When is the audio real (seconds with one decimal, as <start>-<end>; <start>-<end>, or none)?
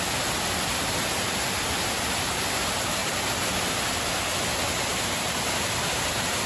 0.0-3.0; 3.5-4.9; 5.9-6.5